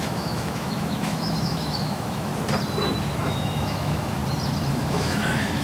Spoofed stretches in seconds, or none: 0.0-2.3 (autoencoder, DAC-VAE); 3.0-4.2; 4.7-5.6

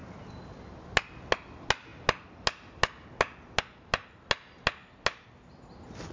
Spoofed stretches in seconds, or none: none

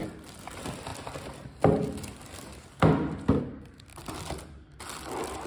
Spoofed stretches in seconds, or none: none